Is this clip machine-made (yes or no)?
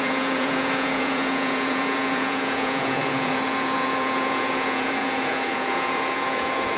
yes